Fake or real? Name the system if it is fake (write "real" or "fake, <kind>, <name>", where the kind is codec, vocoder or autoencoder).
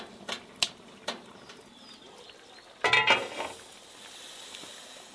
real